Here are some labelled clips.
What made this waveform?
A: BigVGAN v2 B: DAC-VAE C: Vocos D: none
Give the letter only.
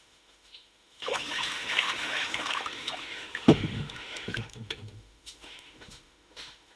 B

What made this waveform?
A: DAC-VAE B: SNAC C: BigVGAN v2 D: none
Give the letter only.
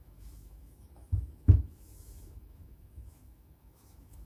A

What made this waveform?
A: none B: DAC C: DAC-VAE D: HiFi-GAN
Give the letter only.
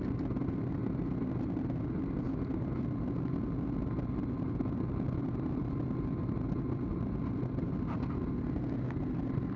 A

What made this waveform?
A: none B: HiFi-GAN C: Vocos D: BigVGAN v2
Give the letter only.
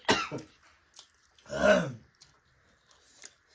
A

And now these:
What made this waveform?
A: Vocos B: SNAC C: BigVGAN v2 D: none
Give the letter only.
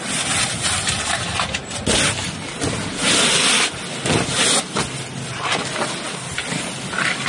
D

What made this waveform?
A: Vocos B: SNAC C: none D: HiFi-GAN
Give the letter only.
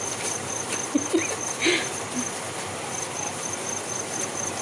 C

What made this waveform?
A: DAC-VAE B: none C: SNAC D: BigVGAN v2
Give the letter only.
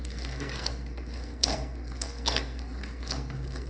C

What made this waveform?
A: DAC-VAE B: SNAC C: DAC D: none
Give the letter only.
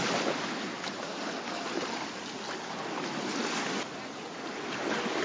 D